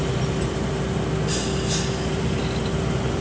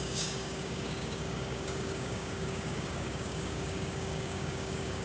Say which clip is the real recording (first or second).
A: first